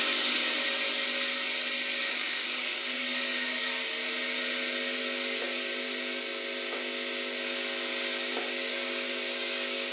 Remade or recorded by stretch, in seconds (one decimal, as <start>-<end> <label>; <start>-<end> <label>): 0.0-0.6 remade; 0.6-2.0 recorded; 2.0-4.0 remade; 4.0-8.6 recorded; 8.6-9.9 remade